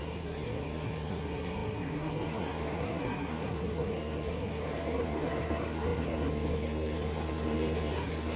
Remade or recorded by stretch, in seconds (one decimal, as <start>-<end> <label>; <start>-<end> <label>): 0.0-8.4 remade